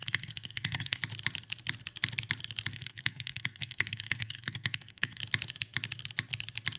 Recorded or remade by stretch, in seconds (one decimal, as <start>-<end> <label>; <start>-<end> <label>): 0.0-1.0 remade; 1.0-2.7 recorded; 2.7-5.2 remade; 5.2-6.8 recorded